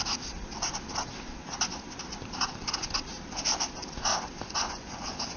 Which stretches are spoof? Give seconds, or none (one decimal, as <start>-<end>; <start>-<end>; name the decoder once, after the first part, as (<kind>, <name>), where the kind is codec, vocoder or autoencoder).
4.1-5.4 (vocoder, Vocos)